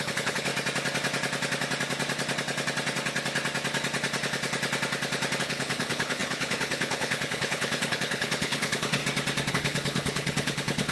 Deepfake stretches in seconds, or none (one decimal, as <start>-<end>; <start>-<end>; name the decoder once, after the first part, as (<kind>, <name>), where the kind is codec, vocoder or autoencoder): 0.0-0.5 (codec, HILCodec); 5.4-9.0; 9.5-10.9